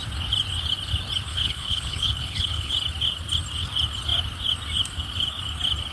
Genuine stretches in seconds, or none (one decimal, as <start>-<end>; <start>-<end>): 0.0-1.3; 2.7-5.9